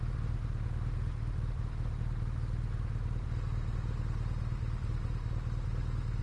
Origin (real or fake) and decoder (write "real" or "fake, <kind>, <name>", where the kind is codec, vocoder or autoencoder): real